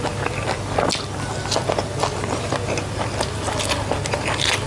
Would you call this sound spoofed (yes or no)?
no